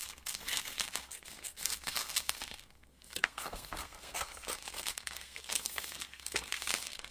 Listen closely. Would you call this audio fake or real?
fake